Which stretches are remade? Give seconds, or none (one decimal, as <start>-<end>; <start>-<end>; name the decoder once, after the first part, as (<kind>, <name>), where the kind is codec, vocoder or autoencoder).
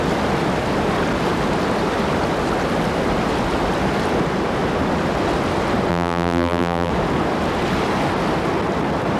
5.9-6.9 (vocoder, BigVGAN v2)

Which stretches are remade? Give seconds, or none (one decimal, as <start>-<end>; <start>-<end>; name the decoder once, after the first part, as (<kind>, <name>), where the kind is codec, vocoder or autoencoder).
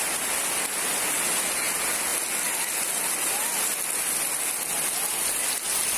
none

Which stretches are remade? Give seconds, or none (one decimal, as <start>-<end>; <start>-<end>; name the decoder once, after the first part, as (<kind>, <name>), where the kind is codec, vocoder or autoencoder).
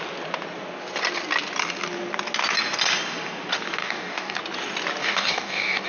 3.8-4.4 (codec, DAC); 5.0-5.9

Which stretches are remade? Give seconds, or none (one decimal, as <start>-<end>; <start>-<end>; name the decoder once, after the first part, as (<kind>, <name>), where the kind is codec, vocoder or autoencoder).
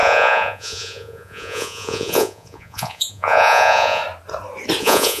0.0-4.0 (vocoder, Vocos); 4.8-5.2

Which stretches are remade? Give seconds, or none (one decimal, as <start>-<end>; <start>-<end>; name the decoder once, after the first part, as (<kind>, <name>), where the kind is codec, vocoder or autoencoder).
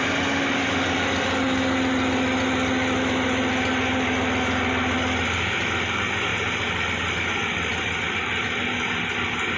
none